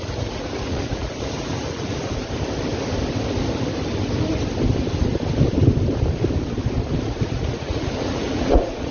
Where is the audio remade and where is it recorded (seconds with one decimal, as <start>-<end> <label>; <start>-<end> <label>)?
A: 0.0-2.2 remade; 2.2-7.2 recorded; 7.2-8.9 remade